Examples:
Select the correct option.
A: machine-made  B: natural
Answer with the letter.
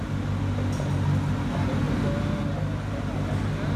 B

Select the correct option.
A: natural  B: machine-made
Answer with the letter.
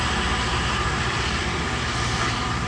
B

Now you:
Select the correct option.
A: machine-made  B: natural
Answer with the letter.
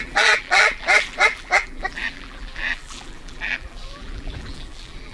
A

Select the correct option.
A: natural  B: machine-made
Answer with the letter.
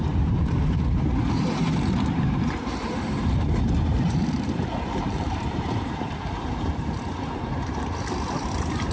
B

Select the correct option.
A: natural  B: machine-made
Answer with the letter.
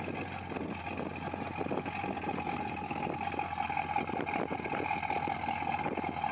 A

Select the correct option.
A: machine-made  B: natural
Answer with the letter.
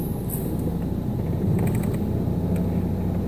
B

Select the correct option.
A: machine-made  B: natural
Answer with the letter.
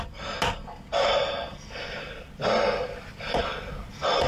B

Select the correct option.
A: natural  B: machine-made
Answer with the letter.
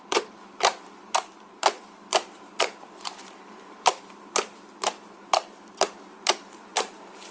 B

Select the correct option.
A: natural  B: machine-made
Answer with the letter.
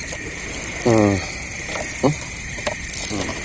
A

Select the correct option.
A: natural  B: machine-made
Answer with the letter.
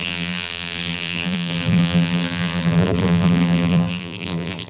B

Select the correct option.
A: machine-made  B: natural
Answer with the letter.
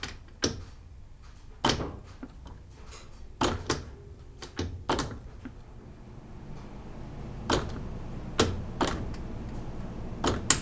B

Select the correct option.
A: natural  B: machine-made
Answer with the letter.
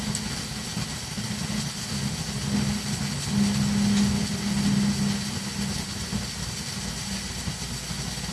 A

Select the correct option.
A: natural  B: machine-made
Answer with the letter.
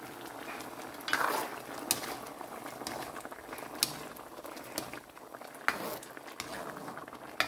A